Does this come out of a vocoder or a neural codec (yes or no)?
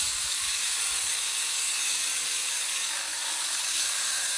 yes